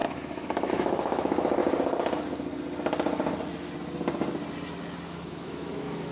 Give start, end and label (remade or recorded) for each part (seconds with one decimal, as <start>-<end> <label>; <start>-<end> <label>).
0.0-1.6 remade; 1.6-5.3 recorded; 5.3-6.1 remade

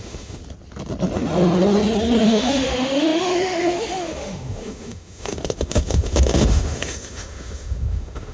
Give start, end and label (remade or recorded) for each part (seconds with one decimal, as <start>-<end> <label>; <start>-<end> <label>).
0.0-0.4 remade; 0.4-2.2 recorded; 2.2-8.3 remade